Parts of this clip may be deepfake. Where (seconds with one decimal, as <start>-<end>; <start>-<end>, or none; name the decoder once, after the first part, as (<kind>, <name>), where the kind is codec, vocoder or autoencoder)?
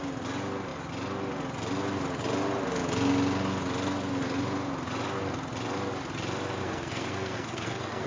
6.6-8.1 (codec, SNAC)